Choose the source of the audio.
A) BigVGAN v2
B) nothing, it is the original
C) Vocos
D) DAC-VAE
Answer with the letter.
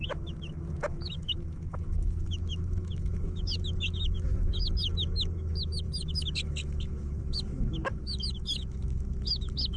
D